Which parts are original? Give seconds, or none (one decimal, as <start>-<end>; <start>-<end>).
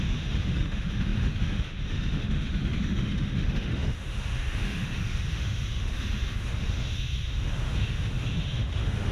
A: none